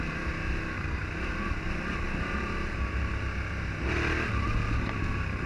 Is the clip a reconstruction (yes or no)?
no